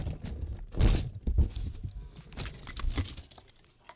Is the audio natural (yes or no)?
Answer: yes